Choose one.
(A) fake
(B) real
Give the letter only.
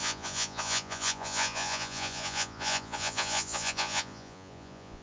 A